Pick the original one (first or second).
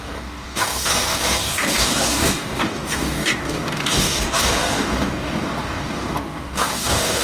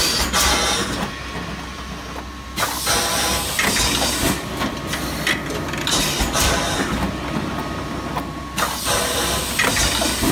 second